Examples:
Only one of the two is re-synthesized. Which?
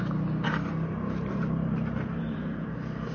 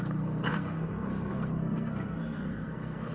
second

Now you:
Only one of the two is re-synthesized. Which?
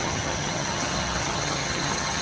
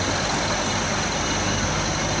first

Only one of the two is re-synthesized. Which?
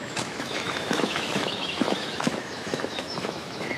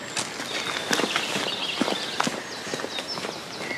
first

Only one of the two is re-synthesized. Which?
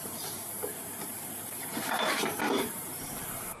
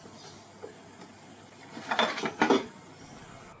first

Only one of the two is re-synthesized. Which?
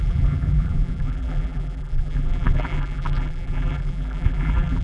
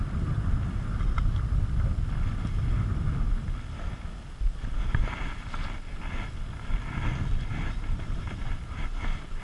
first